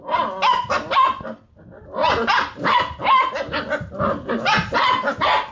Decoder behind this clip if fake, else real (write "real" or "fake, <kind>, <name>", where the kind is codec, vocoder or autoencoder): real